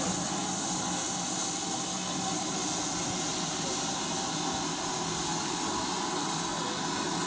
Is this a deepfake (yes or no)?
no